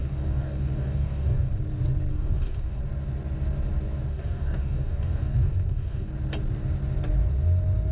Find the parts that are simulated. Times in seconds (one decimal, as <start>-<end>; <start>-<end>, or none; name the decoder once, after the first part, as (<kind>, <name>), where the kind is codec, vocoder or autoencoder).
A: 0.0-1.5 (codec, DAC); 2.1-2.8; 4.1-6.1